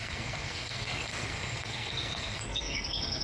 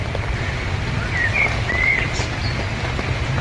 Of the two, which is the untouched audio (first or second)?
second